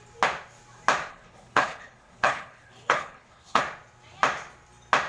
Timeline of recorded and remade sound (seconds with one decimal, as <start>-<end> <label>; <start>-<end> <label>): 0.0-1.1 recorded; 1.1-3.6 remade; 3.6-5.1 recorded